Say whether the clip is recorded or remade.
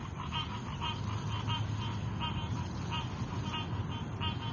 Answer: recorded